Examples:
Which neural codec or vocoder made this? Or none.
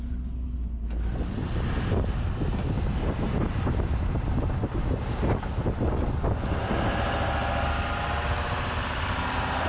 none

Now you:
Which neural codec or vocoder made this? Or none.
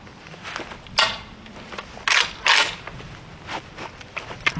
none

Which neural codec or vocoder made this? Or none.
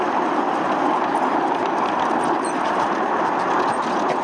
none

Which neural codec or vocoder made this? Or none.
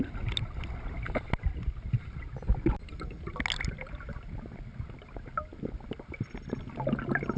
none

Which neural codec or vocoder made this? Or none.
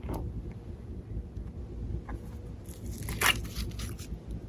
none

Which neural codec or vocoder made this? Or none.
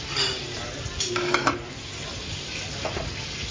none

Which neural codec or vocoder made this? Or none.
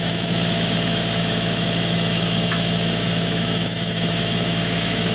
autoencoder, DAC-VAE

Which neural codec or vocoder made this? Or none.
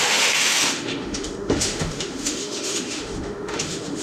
autoencoder, DAC-VAE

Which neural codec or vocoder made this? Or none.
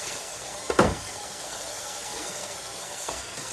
codec, SNAC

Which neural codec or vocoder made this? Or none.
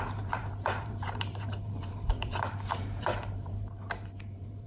vocoder, BigVGAN v2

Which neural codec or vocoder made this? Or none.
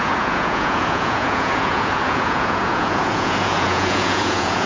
vocoder, Vocos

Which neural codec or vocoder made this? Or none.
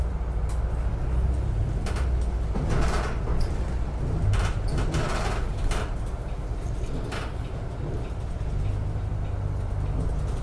none